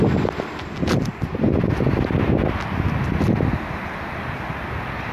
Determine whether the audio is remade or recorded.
recorded